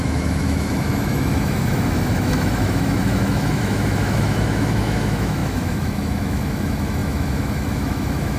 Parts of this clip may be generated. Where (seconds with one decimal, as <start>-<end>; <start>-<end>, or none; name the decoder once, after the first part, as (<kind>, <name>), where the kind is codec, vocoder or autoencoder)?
0.0-8.4 (autoencoder, DAC-VAE)